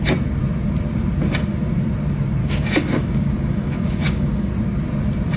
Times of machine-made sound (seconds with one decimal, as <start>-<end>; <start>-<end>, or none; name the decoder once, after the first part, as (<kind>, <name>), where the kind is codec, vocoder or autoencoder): 2.4-4.5 (codec, DAC)